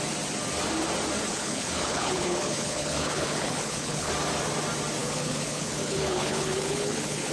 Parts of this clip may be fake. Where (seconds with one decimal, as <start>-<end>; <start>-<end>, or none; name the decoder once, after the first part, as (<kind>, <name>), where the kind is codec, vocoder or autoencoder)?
1.3-4.1 (codec, HILCodec); 5.0-7.3